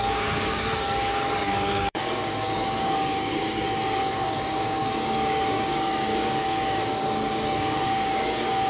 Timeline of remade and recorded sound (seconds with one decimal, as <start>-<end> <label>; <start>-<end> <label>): 0.0-8.7 remade